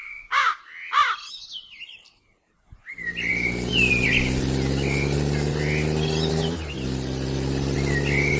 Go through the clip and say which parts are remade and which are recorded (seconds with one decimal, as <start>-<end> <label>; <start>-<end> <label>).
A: 0.0-0.6 remade; 0.6-8.4 recorded